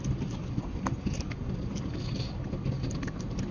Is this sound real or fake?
real